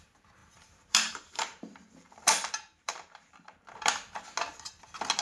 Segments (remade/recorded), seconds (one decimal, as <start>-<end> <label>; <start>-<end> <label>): 0.0-0.4 recorded; 0.4-3.5 remade; 3.5-5.2 recorded